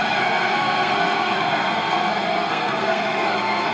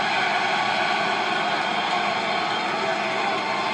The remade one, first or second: first